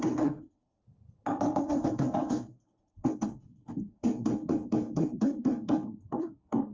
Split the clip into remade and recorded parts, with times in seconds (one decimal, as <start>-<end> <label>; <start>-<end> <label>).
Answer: 0.0-0.8 remade; 0.8-1.6 recorded; 1.6-6.7 remade